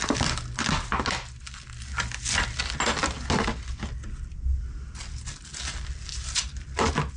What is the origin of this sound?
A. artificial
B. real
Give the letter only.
B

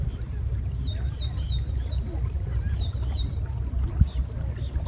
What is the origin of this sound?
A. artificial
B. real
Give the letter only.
B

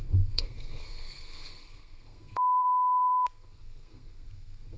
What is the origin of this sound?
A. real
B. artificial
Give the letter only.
B